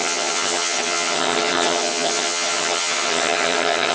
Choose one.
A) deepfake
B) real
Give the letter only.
A